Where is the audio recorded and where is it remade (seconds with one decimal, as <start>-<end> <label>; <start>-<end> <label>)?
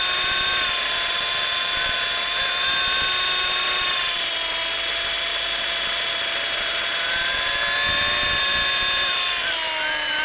0.0-10.2 recorded